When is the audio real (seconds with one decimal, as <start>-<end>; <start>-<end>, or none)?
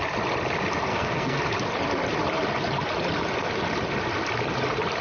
0.0-0.9; 1.4-5.0